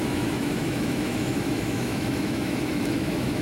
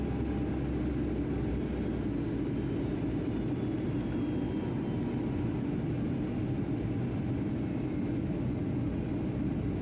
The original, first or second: second